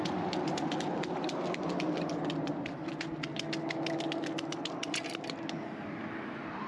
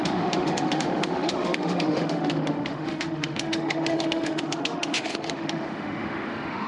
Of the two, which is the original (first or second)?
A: first